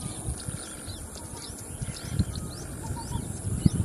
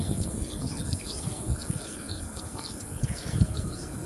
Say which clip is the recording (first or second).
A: first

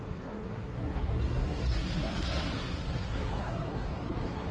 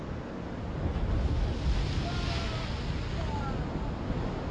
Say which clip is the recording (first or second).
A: second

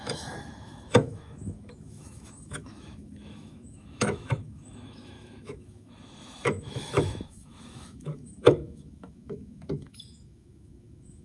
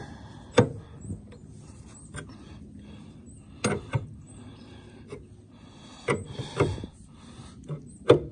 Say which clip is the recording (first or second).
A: second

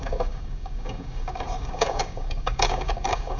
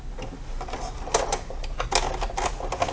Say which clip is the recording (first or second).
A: second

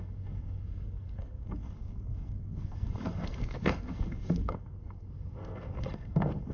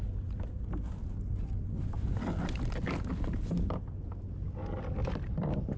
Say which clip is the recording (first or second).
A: second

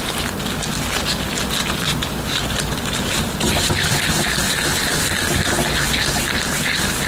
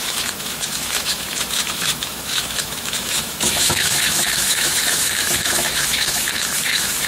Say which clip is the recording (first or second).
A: first